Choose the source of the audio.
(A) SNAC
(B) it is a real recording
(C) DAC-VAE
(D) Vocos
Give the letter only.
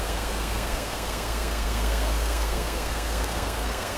A